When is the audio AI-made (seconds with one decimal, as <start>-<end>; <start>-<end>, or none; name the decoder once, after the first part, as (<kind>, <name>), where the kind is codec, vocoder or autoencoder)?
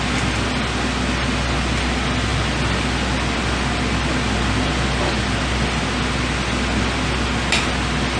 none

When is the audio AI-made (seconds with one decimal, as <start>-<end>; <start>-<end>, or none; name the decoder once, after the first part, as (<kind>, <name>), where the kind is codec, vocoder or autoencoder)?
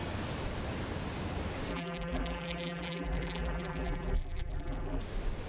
1.7-5.0 (vocoder, BigVGAN v2)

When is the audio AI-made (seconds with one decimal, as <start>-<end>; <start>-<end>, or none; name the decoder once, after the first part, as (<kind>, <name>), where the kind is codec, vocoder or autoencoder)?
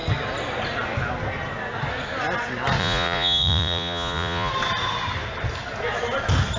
2.8-4.5 (vocoder, Vocos)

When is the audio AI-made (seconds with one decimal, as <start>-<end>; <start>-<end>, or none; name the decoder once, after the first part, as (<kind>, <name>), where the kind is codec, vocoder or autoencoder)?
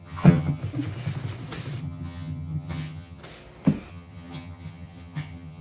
0.0-0.6 (vocoder, HiFi-GAN); 1.8-3.2; 3.9-5.6